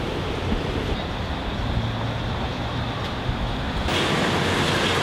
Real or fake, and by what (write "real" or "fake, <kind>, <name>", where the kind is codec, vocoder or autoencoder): real